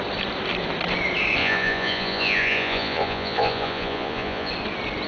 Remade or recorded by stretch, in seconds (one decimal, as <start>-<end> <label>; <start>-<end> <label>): 0.0-1.4 recorded; 1.4-4.5 remade; 4.5-5.1 recorded